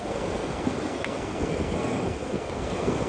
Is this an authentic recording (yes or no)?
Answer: no